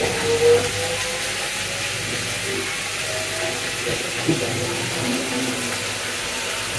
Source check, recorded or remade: recorded